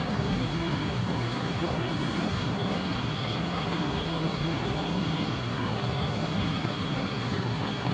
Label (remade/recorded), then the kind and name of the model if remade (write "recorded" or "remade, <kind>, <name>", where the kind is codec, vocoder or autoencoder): remade, codec, SNAC